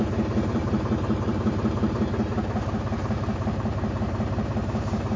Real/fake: fake